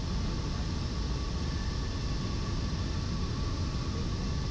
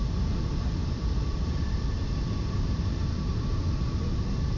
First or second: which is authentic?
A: first